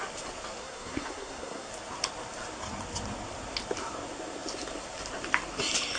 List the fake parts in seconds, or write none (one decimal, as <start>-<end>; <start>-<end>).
0.6-1.7